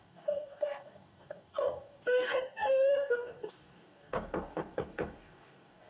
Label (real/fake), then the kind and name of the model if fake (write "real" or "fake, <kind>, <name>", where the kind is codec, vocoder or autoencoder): fake, codec, DAC